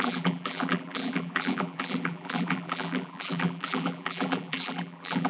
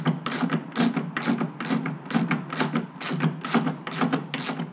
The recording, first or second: second